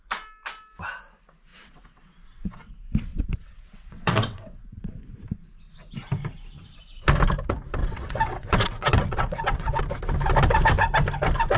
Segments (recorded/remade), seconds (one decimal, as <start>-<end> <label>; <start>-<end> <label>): 0.0-1.5 recorded; 1.5-2.7 remade; 2.7-3.1 recorded; 3.1-4.9 remade; 4.9-7.8 recorded; 7.8-9.8 remade; 9.8-11.6 recorded

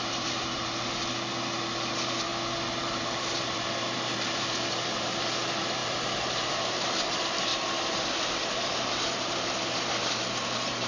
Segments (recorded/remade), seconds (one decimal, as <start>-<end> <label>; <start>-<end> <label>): 0.0-1.0 remade; 1.0-1.9 recorded; 1.9-2.3 remade; 2.3-2.8 recorded; 2.8-5.8 remade; 5.8-6.5 recorded; 6.5-7.5 remade; 7.5-8.7 recorded; 8.7-10.9 remade

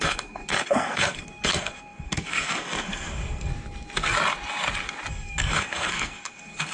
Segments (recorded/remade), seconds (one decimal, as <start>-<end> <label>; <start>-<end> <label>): 0.0-3.5 remade; 3.5-5.1 recorded; 5.1-6.7 remade

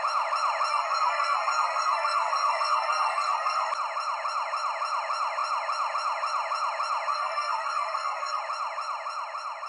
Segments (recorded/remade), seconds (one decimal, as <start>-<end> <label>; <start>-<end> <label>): 0.0-0.7 recorded; 0.7-3.7 remade; 3.7-7.1 recorded; 7.1-8.4 remade; 8.4-9.7 recorded

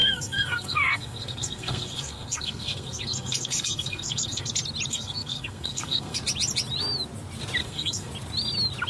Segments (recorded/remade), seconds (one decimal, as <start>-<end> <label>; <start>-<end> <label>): 0.0-4.5 remade; 4.5-4.9 recorded; 4.9-6.2 remade; 6.2-7.6 recorded; 7.6-8.1 remade; 8.1-8.9 recorded

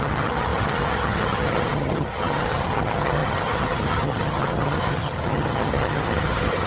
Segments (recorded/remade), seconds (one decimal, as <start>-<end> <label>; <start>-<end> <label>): 0.0-6.7 remade

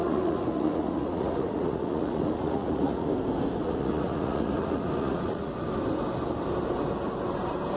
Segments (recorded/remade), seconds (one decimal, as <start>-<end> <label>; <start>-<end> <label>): 0.0-3.1 remade; 3.1-3.6 recorded; 3.6-5.6 remade; 5.6-7.8 recorded